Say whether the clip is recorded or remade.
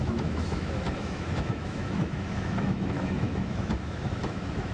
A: remade